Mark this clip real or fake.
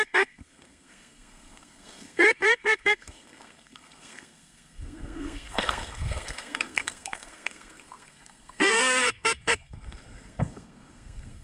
fake